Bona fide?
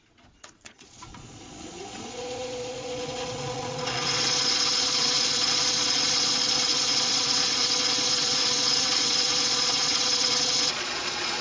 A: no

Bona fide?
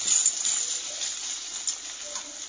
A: yes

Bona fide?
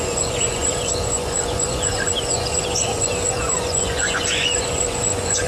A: no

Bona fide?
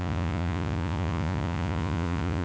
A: no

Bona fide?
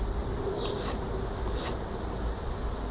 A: yes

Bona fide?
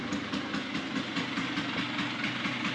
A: yes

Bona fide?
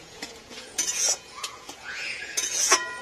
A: no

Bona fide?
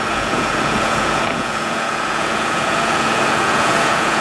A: no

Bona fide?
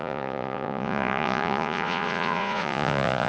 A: no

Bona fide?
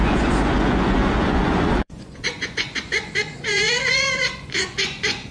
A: no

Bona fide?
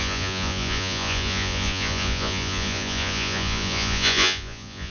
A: no